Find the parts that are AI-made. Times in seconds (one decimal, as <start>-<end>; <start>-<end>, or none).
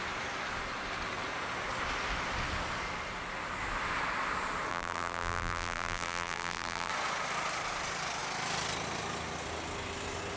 4.7-6.9